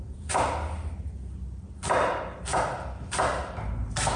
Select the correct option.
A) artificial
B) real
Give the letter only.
B